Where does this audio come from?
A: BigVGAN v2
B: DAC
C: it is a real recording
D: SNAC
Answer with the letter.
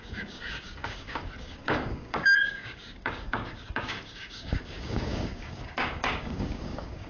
B